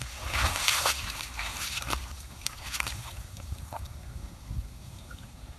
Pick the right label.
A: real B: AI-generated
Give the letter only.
B